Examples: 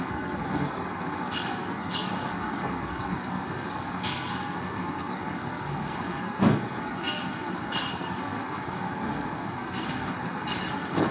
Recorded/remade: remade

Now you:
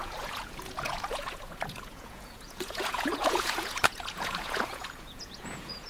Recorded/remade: remade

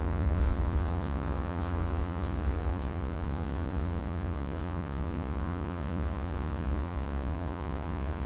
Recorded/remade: remade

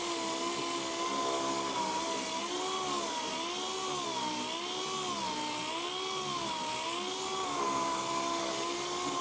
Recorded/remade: recorded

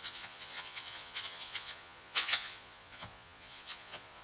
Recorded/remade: remade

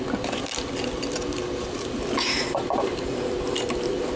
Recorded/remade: recorded